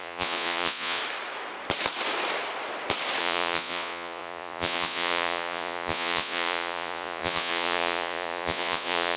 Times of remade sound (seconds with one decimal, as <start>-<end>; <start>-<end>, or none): 0.0-1.0; 3.2-9.2